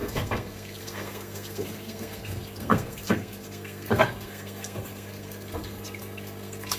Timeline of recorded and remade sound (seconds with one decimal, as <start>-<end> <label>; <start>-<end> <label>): 0.0-6.8 remade